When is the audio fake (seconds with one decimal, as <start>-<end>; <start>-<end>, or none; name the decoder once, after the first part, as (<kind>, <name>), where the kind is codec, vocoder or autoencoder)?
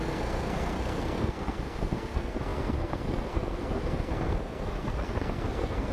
0.0-5.9 (codec, SNAC)